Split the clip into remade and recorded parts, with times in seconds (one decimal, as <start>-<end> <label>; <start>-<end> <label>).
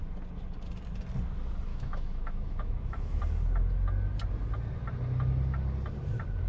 0.0-1.7 recorded; 1.7-3.2 remade; 3.2-6.5 recorded